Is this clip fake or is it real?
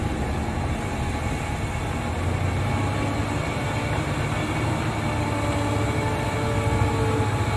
real